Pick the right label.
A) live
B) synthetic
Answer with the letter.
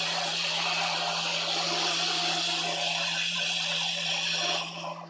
B